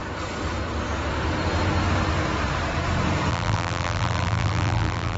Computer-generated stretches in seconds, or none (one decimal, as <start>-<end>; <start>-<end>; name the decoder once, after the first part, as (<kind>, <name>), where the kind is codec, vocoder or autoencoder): 3.3-5.2 (vocoder, BigVGAN v2)